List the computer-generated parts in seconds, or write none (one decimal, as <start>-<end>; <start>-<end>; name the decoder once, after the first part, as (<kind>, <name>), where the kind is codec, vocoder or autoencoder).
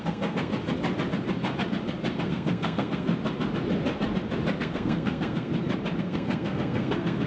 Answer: 0.0-0.5 (codec, SNAC); 2.2-3.1; 4.6-5.5; 6.0-7.3